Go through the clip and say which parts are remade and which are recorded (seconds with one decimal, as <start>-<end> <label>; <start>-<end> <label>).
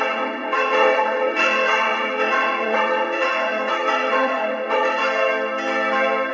0.0-5.0 remade; 5.0-6.3 recorded